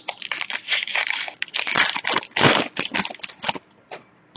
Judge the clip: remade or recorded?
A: recorded